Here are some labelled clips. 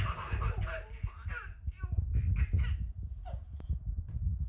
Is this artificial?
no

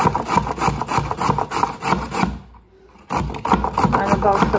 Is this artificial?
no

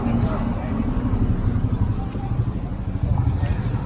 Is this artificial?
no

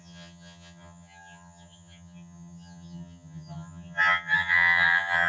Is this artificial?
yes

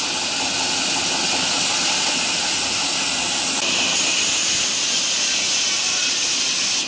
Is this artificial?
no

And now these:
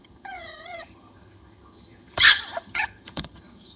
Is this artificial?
yes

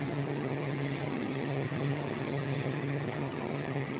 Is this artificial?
yes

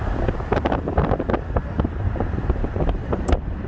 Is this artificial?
no